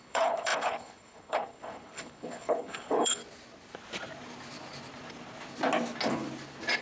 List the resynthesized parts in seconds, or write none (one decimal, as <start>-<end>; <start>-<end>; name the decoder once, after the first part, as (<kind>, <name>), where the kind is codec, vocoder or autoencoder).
0.0-3.2 (codec, HILCodec)

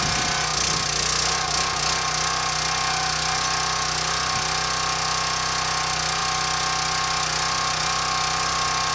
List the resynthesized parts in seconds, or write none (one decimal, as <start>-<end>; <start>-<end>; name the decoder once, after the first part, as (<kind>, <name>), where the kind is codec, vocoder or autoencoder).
none

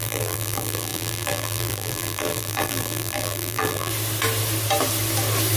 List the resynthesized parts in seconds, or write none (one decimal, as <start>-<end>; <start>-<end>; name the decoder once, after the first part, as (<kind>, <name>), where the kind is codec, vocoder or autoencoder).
0.0-3.9 (vocoder, BigVGAN v2)

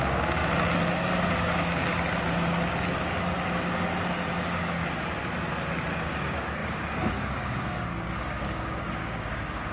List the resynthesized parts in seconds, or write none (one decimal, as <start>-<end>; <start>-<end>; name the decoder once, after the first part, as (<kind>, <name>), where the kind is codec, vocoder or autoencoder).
0.0-0.4 (codec, DAC); 1.1-1.9; 4.4-5.2; 5.9-9.7